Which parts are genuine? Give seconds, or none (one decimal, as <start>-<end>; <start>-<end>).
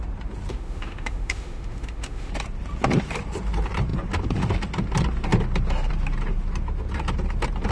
0.0-0.5; 2.3-7.7